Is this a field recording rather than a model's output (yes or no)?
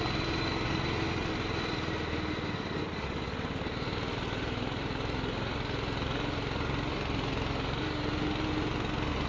yes